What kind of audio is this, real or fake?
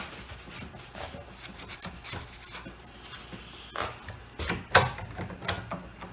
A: real